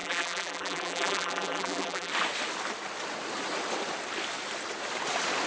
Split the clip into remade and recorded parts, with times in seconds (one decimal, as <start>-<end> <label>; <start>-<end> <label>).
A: 0.0-2.1 remade; 2.1-5.5 recorded